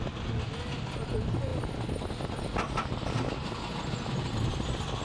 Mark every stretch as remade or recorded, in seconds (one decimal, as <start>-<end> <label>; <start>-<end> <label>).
0.0-5.0 recorded